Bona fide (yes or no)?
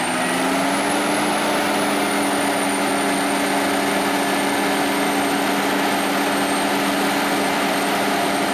yes